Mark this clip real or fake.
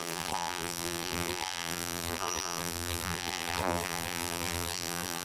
fake